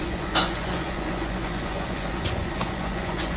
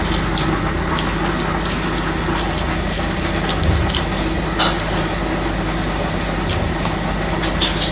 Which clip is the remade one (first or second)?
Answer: first